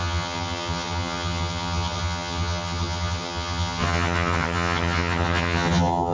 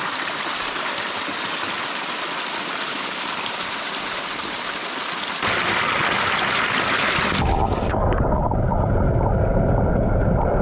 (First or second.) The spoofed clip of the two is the first